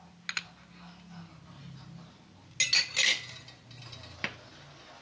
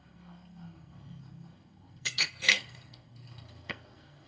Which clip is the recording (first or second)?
first